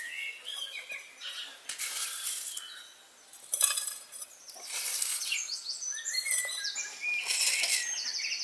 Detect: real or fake real